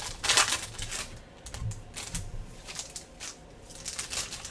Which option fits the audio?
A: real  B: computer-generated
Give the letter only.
A